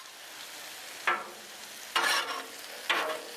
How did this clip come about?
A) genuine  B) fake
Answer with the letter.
A